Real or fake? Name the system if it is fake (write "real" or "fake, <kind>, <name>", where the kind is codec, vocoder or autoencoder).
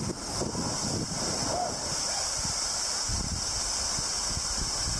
real